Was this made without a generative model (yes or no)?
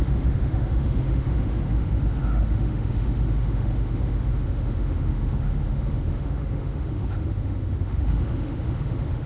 no